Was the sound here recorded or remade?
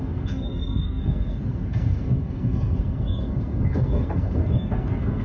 remade